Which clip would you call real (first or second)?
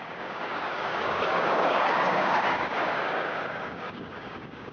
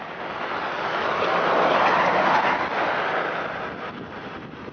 second